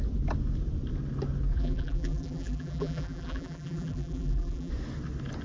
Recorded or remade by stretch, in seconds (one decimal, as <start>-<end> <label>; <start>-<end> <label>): 0.0-1.5 recorded; 1.5-4.7 remade; 4.7-5.4 recorded